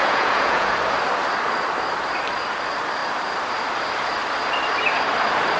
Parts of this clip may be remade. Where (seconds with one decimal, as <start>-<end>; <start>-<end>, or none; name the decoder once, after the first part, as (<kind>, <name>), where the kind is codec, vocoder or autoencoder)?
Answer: 0.0-0.7 (vocoder, Vocos)